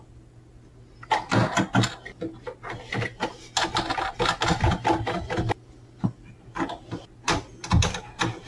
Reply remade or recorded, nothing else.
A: recorded